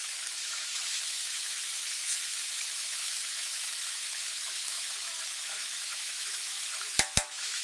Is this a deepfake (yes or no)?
yes